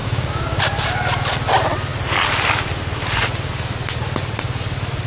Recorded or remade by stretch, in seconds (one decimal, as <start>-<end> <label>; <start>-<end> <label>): 0.0-0.6 remade; 0.6-5.1 recorded